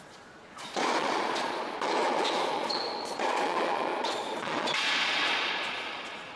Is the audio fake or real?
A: fake